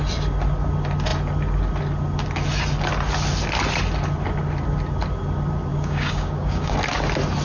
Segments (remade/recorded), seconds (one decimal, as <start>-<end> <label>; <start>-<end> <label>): 0.0-5.7 recorded; 5.7-6.7 remade; 6.7-7.4 recorded

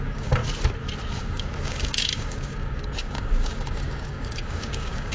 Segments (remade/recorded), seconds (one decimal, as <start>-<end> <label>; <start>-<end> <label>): 0.0-0.4 remade; 0.4-1.2 recorded; 1.2-5.1 remade

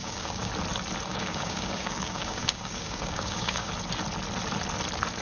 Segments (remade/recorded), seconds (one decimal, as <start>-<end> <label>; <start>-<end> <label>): 0.0-0.5 remade; 0.5-1.1 recorded; 1.1-3.7 remade; 3.7-5.2 recorded

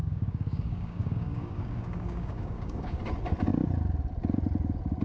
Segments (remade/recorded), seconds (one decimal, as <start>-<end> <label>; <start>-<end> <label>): 0.0-3.0 remade; 3.0-5.0 recorded

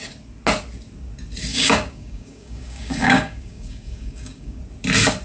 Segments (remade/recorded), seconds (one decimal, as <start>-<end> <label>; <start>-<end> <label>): 0.0-1.5 recorded; 1.5-4.6 remade; 4.6-5.2 recorded

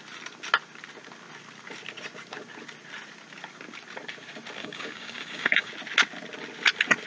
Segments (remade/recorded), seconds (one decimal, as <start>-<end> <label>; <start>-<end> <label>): 0.0-4.6 recorded; 4.6-5.7 remade; 5.7-7.1 recorded